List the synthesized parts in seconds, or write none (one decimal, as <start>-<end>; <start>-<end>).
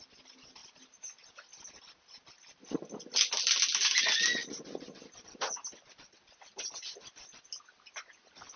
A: none